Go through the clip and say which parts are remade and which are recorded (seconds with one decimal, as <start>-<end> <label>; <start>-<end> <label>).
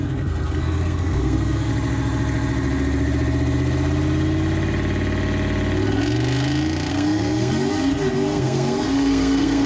0.0-1.7 remade; 1.7-6.9 recorded; 6.9-9.7 remade